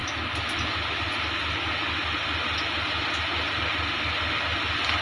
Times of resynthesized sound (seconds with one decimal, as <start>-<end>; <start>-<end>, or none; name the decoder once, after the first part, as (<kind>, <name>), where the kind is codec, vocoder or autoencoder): none